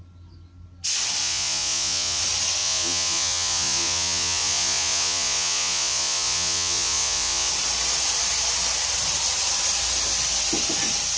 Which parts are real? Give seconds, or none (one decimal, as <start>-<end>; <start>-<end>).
0.0-1.2; 2.2-2.6; 7.5-11.2